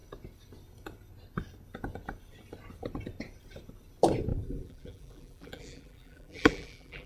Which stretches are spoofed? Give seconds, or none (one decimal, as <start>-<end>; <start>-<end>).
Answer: 4.3-7.1